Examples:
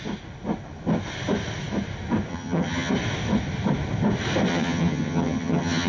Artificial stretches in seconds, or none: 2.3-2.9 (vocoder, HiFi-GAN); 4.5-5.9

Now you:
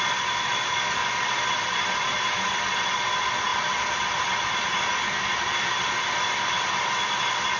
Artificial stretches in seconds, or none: 1.0-2.6 (vocoder, BigVGAN v2); 3.5-6.5